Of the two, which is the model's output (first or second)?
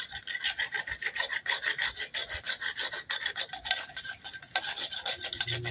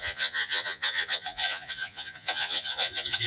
second